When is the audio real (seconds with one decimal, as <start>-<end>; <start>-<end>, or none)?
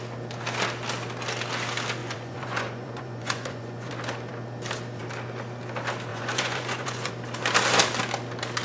0.0-2.0; 3.9-6.1; 7.1-8.6